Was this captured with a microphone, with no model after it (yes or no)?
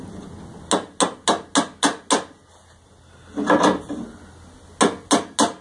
yes